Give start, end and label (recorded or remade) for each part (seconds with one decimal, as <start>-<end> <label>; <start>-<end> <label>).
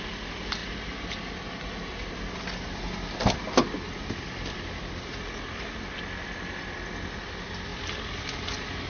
0.0-8.9 recorded